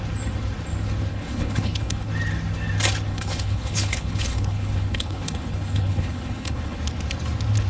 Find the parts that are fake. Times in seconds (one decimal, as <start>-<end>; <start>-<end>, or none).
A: 1.1-2.1; 3.1-6.8